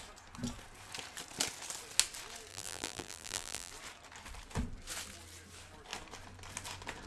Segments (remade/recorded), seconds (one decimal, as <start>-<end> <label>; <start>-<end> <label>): 0.0-2.5 recorded; 2.5-3.7 remade; 3.7-7.1 recorded